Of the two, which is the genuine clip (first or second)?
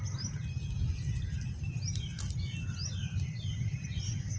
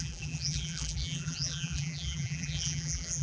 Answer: first